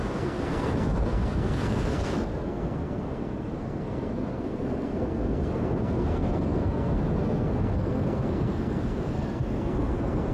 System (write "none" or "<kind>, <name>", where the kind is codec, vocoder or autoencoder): codec, SNAC